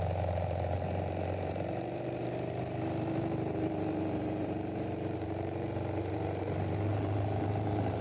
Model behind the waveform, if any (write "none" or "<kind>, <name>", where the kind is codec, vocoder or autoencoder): vocoder, BigVGAN v2